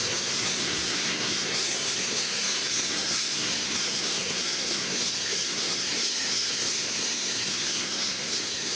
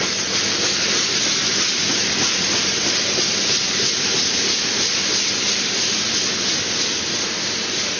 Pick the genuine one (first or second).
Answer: second